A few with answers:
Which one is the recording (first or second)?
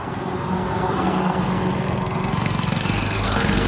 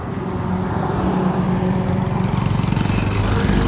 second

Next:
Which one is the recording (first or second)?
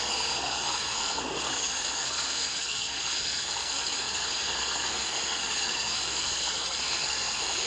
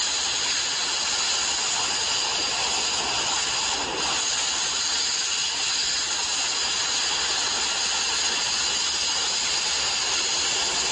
second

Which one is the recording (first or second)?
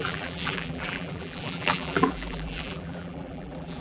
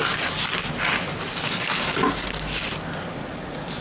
second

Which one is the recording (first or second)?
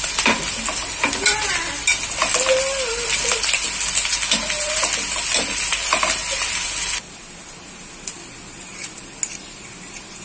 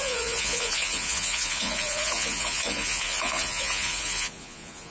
first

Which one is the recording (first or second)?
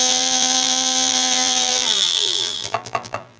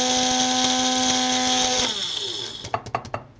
second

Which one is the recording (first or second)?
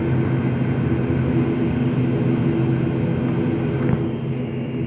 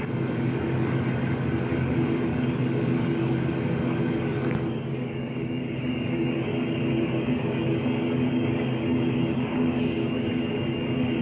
first